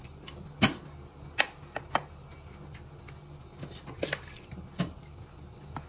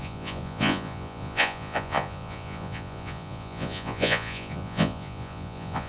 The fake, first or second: second